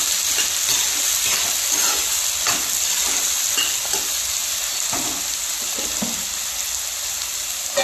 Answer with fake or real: real